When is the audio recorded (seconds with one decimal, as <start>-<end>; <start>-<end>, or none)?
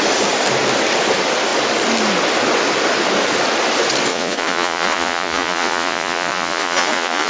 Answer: 0.0-4.1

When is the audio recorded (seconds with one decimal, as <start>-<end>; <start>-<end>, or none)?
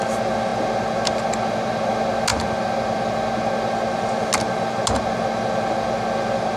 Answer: 0.0-6.6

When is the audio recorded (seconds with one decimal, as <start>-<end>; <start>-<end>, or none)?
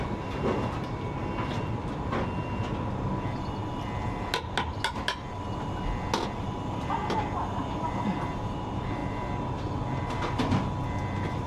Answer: 0.0-11.5